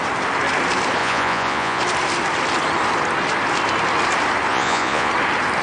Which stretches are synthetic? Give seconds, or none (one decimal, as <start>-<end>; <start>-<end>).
1.0-1.8; 4.5-5.1